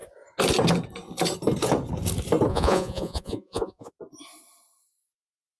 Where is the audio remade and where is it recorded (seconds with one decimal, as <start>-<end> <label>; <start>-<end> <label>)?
0.0-2.5 recorded; 2.5-3.9 remade; 3.9-5.6 recorded